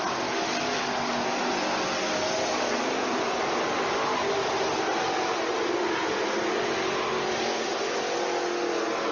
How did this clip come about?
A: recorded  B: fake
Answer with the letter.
A